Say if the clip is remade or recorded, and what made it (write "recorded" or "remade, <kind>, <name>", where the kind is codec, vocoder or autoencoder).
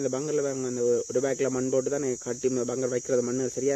recorded